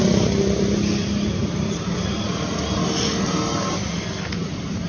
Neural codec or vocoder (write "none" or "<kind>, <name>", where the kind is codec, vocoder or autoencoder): none